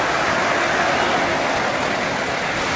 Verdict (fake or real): real